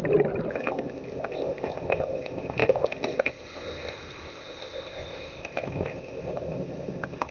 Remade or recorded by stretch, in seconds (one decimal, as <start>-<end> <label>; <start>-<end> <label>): 0.0-0.5 recorded; 0.5-7.3 remade